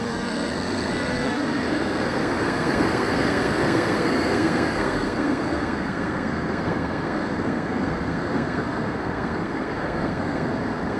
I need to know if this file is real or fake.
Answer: fake